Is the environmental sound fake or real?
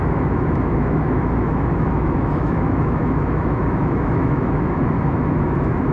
fake